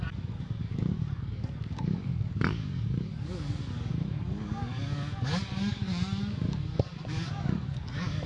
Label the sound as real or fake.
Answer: fake